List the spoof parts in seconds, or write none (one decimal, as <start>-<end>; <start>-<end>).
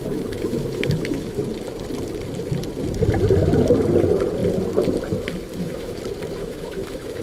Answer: 0.0-1.4; 5.5-6.0; 6.4-7.2